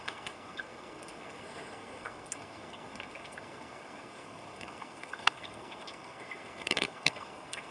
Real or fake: fake